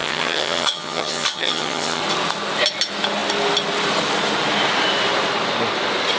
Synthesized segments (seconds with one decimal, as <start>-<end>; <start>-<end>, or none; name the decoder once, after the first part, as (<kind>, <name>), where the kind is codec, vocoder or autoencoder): 0.0-2.0 (vocoder, HiFi-GAN)